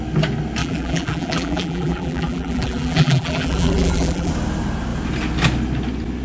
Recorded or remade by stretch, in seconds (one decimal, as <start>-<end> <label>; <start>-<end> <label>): 0.0-0.6 recorded; 0.6-4.3 remade; 4.3-6.2 recorded